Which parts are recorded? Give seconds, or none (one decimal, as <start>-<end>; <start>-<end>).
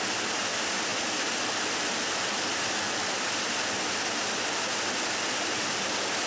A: 0.0-6.3